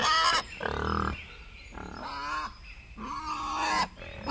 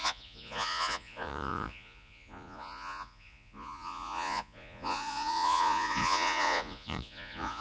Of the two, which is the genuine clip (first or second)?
first